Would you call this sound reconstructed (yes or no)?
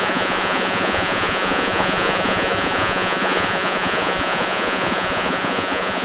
yes